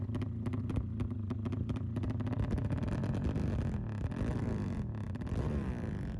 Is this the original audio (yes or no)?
yes